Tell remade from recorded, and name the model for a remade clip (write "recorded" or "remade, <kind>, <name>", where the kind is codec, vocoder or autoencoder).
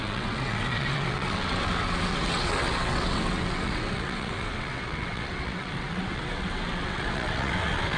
remade, vocoder, WaveNeXt